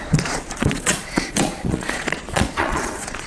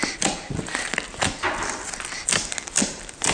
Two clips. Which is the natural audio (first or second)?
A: second